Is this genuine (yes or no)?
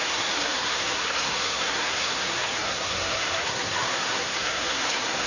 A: no